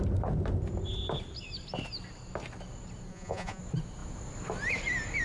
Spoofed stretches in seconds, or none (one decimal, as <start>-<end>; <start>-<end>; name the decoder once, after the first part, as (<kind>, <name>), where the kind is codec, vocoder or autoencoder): 3.1-3.6 (vocoder, Vocos)